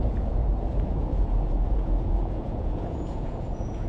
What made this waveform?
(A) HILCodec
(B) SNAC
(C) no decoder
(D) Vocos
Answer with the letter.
D